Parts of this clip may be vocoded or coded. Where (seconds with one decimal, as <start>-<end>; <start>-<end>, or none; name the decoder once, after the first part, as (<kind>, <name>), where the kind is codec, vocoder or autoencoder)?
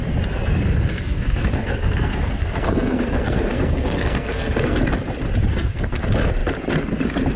0.9-4.8 (codec, SNAC); 5.5-6.0